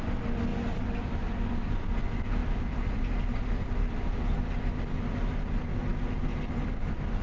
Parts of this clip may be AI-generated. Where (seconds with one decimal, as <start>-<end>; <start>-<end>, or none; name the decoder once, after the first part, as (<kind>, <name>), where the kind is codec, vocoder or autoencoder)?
0.5-1.2 (vocoder, BigVGAN v2); 2.4-4.7